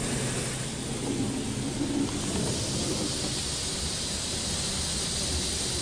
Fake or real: real